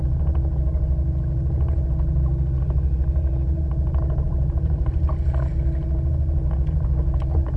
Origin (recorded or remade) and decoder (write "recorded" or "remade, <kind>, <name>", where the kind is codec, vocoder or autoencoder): recorded